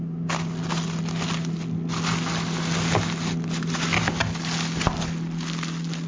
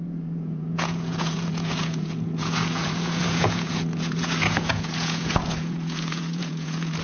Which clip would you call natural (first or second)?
first